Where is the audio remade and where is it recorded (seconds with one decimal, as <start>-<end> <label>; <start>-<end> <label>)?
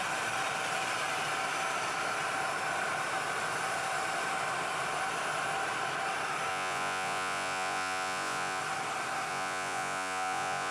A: 0.0-6.5 recorded; 6.5-8.6 remade; 8.6-9.3 recorded; 9.3-10.7 remade